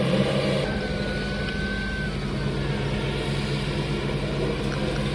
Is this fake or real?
real